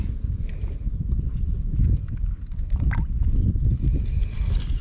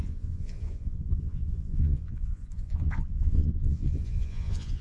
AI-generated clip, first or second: second